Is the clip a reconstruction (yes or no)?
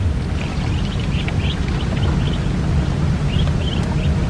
no